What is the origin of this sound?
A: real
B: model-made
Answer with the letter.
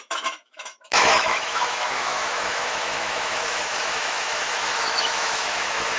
B